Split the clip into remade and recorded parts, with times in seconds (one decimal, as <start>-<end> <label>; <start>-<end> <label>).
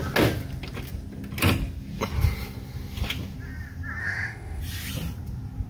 0.0-4.0 recorded; 4.0-4.6 remade; 4.6-5.7 recorded